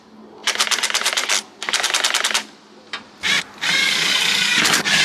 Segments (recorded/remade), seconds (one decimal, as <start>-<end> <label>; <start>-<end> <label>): 0.0-3.8 recorded; 3.8-5.0 remade